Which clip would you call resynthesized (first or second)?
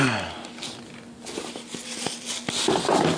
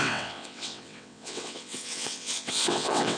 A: second